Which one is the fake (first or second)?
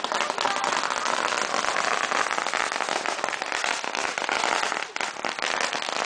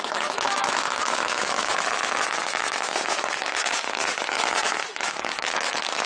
second